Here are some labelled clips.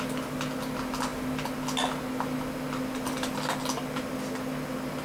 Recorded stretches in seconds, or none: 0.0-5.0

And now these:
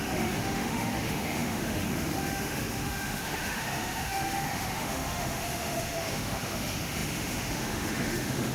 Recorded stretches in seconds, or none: none

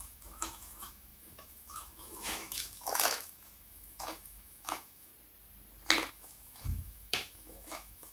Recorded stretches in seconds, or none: 5.1-6.1

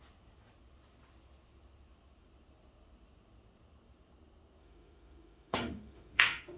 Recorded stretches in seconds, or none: 0.0-4.6